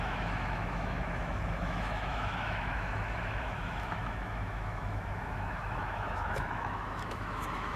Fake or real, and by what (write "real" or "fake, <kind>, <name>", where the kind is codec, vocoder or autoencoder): fake, autoencoder, DAC-VAE